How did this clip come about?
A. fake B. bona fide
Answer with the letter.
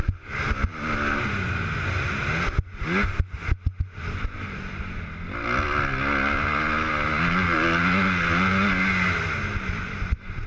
B